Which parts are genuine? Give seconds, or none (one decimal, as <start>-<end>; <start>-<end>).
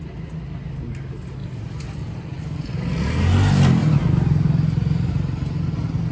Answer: 0.0-3.8; 5.1-6.1